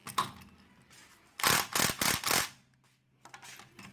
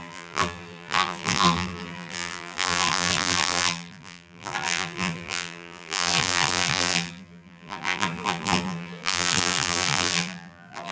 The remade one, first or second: second